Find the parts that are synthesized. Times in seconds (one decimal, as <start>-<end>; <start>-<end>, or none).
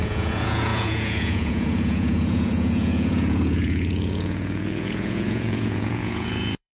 0.0-6.8